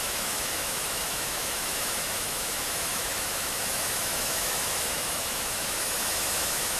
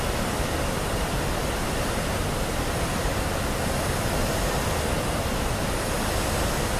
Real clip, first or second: second